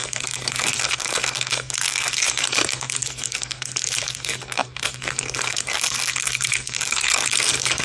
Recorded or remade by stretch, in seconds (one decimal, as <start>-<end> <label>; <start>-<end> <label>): 0.0-7.8 remade

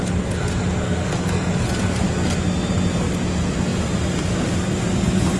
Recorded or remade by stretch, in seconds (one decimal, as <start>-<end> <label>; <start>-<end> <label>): 0.0-0.8 recorded; 0.8-1.5 remade; 1.5-5.4 recorded

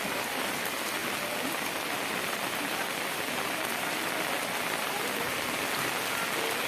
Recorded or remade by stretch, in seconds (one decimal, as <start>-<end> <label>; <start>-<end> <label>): 0.0-6.7 recorded

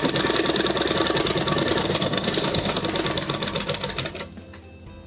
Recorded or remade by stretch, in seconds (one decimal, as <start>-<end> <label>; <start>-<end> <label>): 0.0-1.8 recorded; 1.8-2.8 remade; 2.8-5.1 recorded

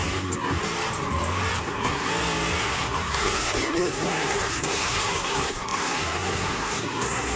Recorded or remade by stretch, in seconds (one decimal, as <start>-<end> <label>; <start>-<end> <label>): 0.0-0.6 remade; 0.6-1.6 recorded; 1.6-2.1 remade; 2.1-2.6 recorded; 2.6-7.4 remade